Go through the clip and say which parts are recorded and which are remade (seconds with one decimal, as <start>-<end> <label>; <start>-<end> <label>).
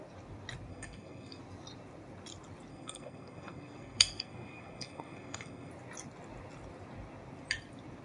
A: 0.0-0.7 recorded; 0.7-1.4 remade; 1.4-2.7 recorded; 2.7-5.7 remade; 5.7-8.0 recorded